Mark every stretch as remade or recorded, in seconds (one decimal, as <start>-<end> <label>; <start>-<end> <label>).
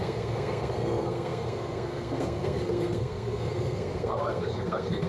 0.0-5.1 remade